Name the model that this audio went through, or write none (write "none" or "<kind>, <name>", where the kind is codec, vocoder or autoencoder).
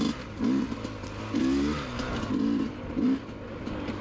none